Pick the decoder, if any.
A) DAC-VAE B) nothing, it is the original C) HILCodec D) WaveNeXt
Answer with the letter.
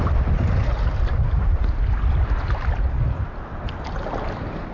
B